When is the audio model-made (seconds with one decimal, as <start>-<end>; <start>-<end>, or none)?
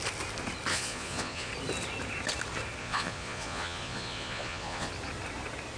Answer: 0.7-1.5; 2.8-4.9